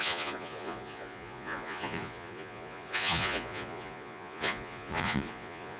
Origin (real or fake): fake